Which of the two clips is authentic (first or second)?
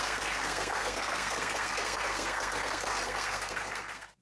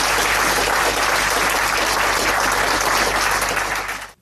second